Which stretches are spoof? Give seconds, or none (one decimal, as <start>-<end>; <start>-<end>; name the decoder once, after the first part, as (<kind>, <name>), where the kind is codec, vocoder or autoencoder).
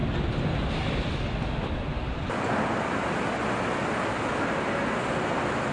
none